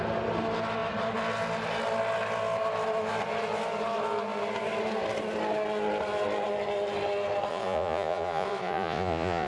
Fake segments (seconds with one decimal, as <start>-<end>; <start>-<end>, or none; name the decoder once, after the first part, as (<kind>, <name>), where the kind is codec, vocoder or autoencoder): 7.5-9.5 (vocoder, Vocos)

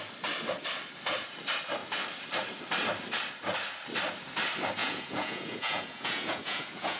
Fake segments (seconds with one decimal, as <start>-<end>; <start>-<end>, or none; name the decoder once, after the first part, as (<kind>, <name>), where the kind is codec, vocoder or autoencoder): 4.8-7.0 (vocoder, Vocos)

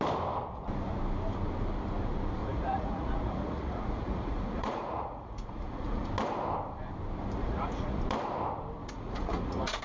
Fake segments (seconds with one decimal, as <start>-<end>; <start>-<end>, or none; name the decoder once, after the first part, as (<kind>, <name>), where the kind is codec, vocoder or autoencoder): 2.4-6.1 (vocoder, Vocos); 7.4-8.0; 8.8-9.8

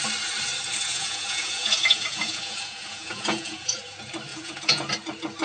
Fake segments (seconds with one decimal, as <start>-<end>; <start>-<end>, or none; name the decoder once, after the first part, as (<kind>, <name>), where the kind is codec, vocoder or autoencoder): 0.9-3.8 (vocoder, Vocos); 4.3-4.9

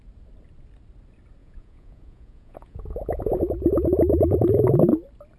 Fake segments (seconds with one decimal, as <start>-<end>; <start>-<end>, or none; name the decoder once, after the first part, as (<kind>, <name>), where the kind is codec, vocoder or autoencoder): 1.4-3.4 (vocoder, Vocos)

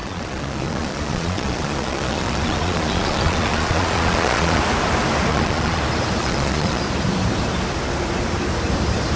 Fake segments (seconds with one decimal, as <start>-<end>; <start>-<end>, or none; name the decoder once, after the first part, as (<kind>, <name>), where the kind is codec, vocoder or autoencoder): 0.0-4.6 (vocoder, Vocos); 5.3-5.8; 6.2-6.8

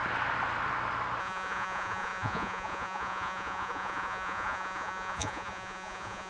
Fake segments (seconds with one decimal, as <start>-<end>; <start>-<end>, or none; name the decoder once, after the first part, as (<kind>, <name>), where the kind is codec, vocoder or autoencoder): 1.2-6.3 (vocoder, Vocos)